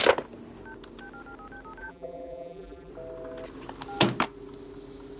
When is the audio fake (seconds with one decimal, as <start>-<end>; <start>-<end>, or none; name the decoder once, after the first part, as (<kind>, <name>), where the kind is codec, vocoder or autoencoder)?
1.8-2.9 (vocoder, BigVGAN v2)